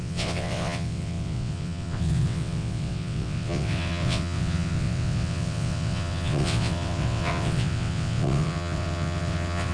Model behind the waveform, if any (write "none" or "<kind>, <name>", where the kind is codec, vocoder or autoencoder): vocoder, WaveNeXt